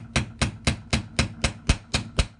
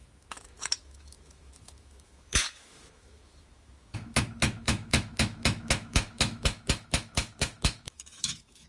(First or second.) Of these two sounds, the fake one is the second